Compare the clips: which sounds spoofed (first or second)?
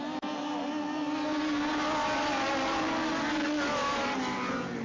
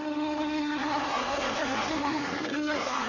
second